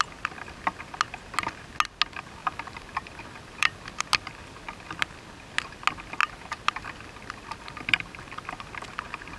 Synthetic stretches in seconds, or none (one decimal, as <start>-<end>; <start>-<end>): 2.4-4.0; 6.2-8.7